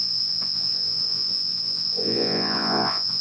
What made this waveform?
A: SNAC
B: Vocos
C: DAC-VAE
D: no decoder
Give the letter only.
B